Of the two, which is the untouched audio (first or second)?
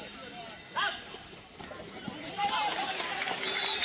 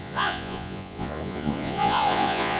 first